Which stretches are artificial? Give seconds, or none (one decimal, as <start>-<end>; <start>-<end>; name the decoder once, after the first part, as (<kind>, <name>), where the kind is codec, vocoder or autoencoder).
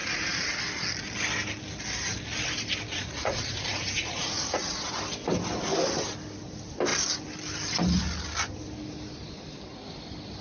0.0-0.6 (vocoder, Vocos); 2.9-4.9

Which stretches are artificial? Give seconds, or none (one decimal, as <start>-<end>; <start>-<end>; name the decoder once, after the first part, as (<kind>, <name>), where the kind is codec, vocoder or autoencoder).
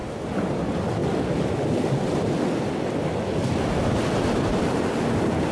none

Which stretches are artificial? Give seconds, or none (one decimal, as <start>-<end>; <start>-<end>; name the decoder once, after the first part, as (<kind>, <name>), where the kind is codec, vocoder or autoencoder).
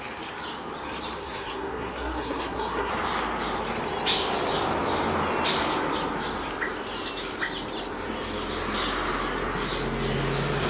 1.2-2.9 (codec, SNAC)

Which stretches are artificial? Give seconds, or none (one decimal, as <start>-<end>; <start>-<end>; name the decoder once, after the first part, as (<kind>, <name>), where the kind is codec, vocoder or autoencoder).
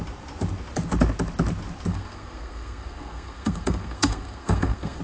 1.9-5.0 (codec, SNAC)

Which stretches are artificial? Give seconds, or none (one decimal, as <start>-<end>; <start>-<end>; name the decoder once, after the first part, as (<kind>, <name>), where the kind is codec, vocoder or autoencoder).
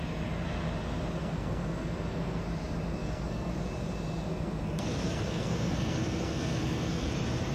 1.2-2.4 (codec, SNAC); 3.0-3.5; 4.3-7.1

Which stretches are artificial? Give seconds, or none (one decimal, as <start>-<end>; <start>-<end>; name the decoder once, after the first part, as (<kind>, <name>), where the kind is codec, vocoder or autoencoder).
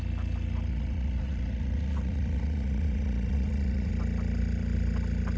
0.7-3.9 (vocoder, Vocos)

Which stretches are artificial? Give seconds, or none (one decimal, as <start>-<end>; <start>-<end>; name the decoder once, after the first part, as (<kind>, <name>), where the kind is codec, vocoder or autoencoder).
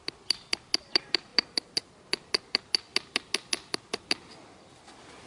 none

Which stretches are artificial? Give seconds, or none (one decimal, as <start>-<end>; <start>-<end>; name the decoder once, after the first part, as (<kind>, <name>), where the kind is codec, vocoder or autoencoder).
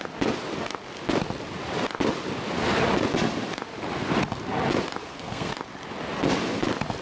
5.0-5.5 (codec, SNAC)